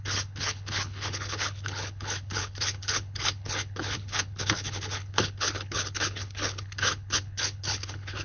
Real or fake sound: fake